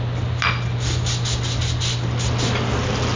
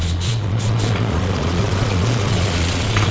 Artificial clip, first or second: second